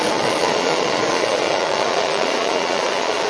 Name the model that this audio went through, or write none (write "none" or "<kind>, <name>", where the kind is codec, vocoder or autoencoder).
vocoder, Vocos